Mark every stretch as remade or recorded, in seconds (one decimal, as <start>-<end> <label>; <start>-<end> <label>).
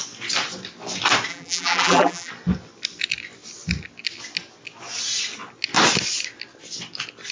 0.0-1.3 recorded; 1.3-2.3 remade; 2.3-7.3 recorded